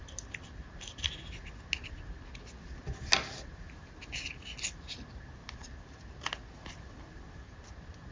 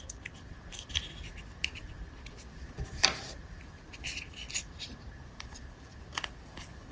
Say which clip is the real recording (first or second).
first